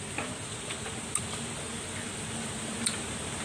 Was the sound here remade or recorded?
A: recorded